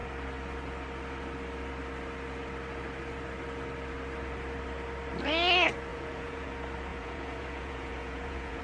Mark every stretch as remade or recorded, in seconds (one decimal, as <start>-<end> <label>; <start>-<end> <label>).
0.0-5.9 recorded; 5.9-6.5 remade; 6.5-6.9 recorded; 6.9-8.6 remade